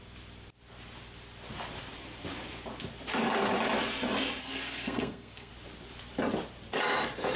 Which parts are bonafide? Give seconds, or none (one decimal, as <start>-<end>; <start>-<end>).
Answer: 0.0-4.4; 5.5-7.4